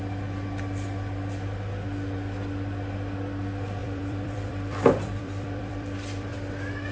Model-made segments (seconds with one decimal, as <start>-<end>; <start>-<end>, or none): 3.8-6.3